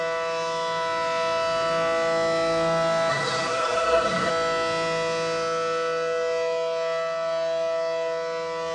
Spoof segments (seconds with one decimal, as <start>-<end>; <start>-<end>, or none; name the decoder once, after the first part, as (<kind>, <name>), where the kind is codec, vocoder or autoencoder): 3.1-4.3 (codec, SNAC)